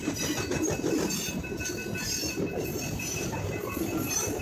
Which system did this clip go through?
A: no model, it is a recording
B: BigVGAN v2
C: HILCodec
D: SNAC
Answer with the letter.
A